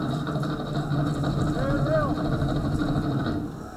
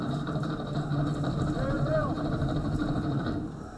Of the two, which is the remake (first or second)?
second